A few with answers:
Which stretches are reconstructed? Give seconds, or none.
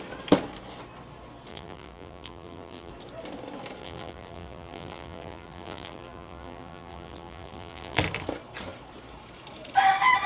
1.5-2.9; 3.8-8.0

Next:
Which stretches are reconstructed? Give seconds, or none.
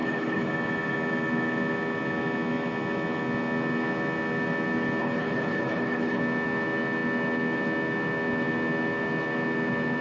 0.0-0.5; 5.0-6.2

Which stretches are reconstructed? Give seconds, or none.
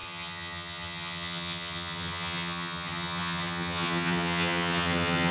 0.0-5.3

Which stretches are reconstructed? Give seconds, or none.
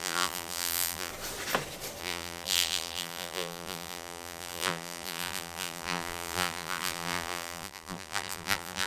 0.0-1.1; 2.0-8.9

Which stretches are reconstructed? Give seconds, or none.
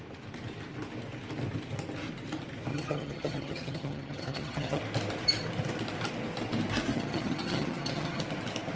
2.7-4.8; 6.9-8.2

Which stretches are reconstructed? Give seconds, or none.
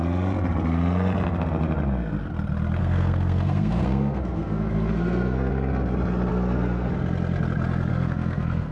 2.8-5.5; 6.3-6.9; 7.9-8.7